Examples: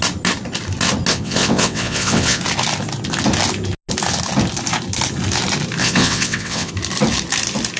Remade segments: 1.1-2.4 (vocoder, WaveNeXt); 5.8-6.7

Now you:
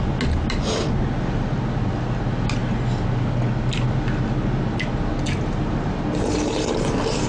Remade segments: none

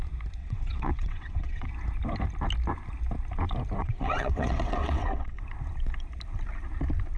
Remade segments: 0.4-1.7 (vocoder, WaveNeXt); 3.8-5.4

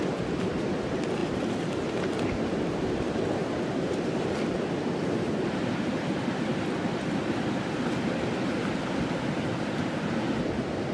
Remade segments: none

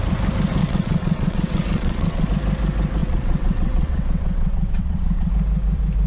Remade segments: 0.6-2.3 (vocoder, WaveNeXt); 3.0-5.3

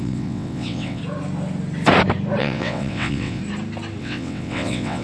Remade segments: 0.0-1.0 (vocoder, WaveNeXt); 2.4-3.4; 4.0-5.0